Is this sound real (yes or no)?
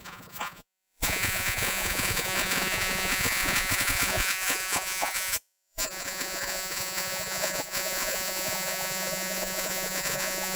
no